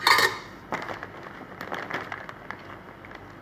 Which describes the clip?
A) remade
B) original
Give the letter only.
B